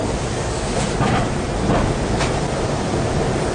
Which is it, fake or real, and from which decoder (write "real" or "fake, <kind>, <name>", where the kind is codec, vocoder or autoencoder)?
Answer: real